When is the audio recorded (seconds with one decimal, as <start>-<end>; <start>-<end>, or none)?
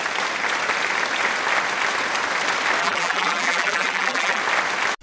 0.0-2.8; 4.4-5.0